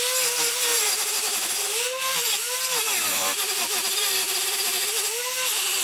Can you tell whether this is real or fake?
real